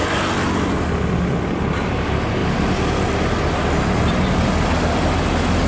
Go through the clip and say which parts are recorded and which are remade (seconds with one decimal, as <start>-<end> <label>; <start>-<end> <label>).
0.0-5.7 recorded